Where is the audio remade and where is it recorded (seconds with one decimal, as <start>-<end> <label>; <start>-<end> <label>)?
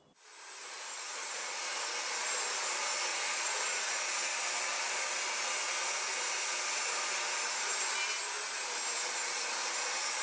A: 0.0-0.6 recorded; 0.6-1.9 remade; 1.9-3.1 recorded; 3.1-4.0 remade; 4.0-10.2 recorded